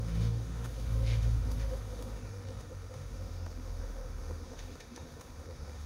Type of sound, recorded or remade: remade